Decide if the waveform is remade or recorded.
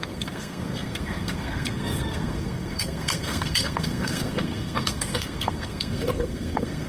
remade